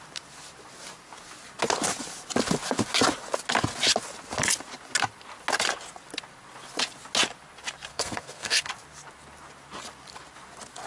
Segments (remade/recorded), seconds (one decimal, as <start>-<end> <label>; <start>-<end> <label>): 0.0-7.9 recorded; 7.9-8.7 remade; 8.7-10.9 recorded